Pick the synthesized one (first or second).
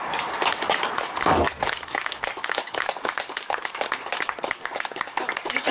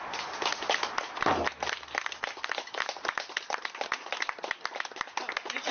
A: first